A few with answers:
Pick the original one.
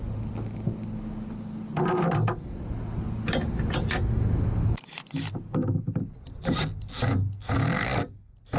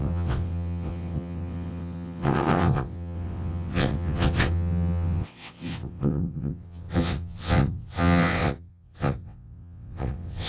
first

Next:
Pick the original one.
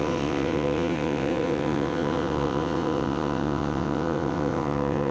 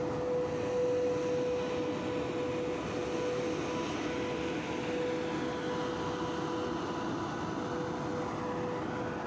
second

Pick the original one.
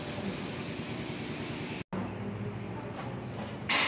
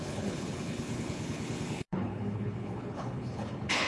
first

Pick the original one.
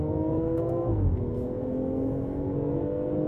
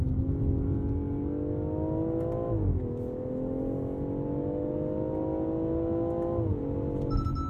second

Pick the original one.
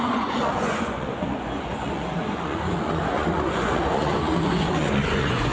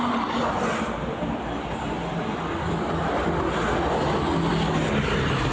second